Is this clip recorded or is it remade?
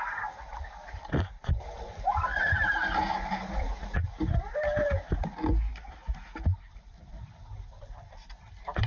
recorded